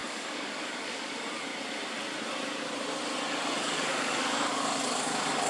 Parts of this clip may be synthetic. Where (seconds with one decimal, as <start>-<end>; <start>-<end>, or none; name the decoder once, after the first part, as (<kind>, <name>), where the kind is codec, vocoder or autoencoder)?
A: 0.0-1.5 (codec, DAC); 3.6-5.5

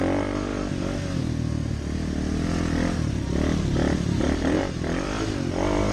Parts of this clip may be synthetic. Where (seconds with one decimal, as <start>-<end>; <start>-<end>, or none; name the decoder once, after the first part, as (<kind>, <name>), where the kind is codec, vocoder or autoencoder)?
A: 3.8-4.6 (vocoder, BigVGAN v2)

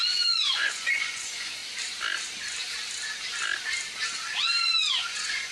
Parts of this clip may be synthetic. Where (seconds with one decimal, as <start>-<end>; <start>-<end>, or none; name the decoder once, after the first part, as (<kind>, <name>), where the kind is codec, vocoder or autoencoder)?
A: 0.0-1.6 (vocoder, Vocos); 4.9-5.5

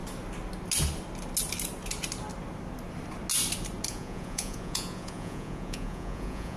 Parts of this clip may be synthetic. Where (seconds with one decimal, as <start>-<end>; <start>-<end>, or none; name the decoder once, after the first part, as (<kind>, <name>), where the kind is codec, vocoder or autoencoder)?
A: 3.9-6.6 (vocoder, Vocos)

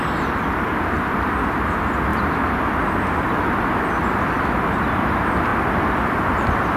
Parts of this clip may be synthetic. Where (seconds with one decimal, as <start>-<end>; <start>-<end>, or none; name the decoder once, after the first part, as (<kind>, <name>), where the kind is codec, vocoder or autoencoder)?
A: none

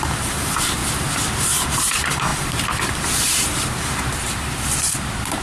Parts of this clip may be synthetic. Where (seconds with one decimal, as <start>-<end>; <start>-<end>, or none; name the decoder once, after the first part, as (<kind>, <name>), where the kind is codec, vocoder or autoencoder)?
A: 0.0-0.8 (vocoder, BigVGAN v2); 1.4-5.4

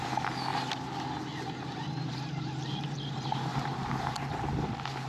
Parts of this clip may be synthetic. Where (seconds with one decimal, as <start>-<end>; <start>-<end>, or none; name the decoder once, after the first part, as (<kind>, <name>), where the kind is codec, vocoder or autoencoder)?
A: 0.0-0.5 (vocoder, BigVGAN v2); 1.9-5.1